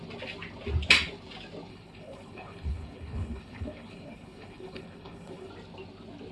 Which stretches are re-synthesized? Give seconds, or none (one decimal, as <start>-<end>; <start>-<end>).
1.7-5.5